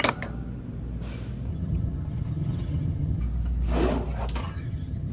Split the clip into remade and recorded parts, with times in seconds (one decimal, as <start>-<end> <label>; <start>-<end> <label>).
0.0-1.5 recorded; 1.5-3.2 remade; 3.2-4.4 recorded; 4.4-5.1 remade